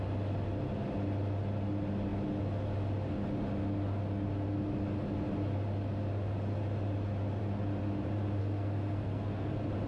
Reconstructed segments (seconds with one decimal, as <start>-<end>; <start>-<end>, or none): 8.4-9.5